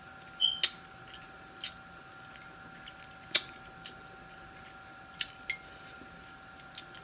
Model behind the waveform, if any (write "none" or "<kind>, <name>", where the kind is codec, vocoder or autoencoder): none